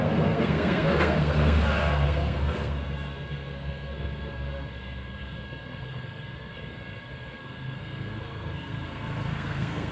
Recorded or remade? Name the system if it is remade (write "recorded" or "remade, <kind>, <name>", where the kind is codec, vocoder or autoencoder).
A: remade, codec, SNAC